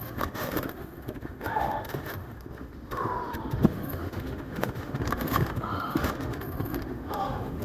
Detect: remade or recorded remade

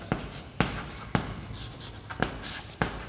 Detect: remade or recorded recorded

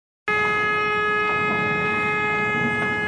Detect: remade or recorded recorded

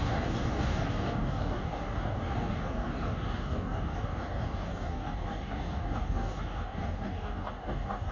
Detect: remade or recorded remade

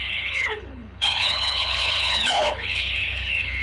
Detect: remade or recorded remade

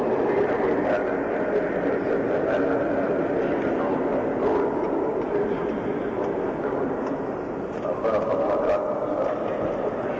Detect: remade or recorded recorded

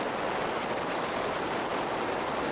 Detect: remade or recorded recorded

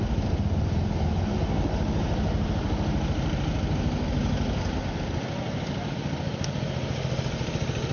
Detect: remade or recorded recorded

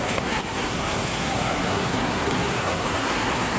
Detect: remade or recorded remade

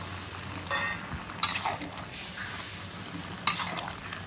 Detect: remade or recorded recorded